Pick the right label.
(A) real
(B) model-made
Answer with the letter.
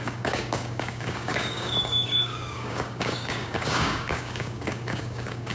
B